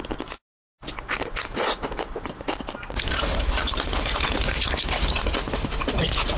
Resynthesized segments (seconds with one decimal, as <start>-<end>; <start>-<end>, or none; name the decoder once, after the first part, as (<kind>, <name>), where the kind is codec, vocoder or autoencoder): none